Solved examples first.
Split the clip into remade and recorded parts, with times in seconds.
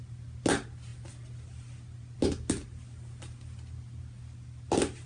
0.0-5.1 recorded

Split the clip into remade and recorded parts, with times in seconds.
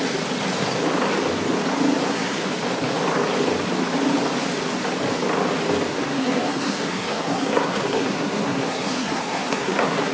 0.0-2.0 recorded; 2.0-2.5 remade; 2.5-5.9 recorded; 5.9-10.1 remade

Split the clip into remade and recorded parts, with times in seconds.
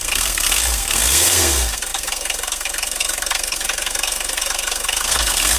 0.0-5.6 remade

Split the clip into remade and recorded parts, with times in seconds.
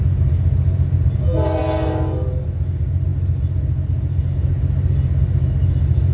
0.0-6.1 recorded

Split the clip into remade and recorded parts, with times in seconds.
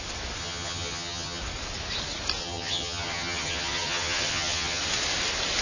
0.0-0.4 recorded; 0.4-1.4 remade; 1.4-2.4 recorded; 2.4-4.8 remade; 4.8-5.6 recorded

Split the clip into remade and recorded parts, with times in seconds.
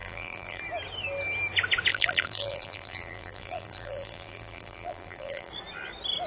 0.0-0.6 remade; 0.6-1.9 recorded; 1.9-5.5 remade; 5.5-6.3 recorded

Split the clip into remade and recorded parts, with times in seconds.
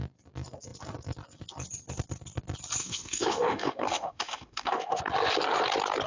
0.0-2.8 recorded; 2.8-5.0 remade; 5.0-6.1 recorded